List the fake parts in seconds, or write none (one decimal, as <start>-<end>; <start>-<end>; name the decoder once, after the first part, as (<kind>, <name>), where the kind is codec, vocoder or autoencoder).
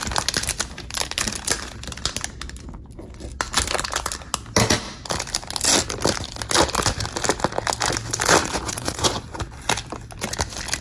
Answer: 8.4-9.4 (vocoder, Vocos)